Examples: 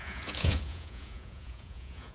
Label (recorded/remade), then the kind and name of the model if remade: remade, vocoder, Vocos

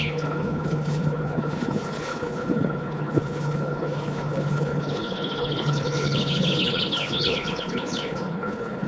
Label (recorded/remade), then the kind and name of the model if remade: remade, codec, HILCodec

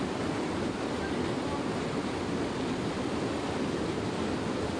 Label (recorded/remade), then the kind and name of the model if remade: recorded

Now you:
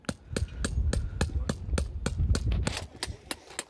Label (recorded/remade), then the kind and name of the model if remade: recorded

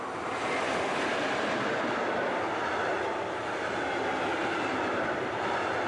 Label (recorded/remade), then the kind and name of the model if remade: recorded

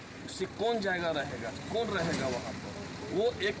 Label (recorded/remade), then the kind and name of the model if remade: recorded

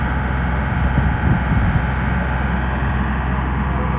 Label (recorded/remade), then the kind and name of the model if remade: recorded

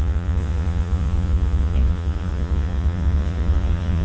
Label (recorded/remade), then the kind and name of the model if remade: remade, vocoder, Vocos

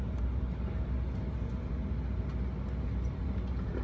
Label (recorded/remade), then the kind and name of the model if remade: recorded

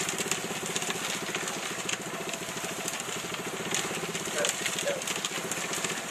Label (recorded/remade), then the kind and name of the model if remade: recorded